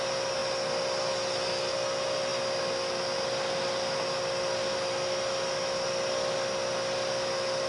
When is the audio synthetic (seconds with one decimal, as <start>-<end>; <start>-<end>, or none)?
none